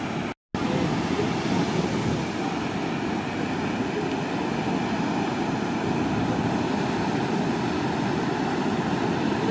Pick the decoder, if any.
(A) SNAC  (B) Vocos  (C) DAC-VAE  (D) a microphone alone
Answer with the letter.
D